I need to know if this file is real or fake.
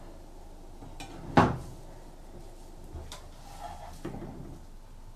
real